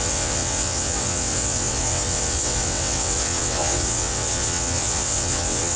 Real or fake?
fake